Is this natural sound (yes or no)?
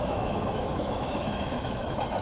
no